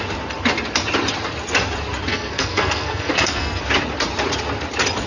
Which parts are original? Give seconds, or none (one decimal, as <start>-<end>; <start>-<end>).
0.0-2.1; 3.6-5.1

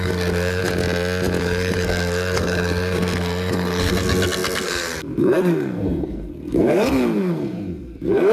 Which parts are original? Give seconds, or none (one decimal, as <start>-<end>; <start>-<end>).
0.6-1.4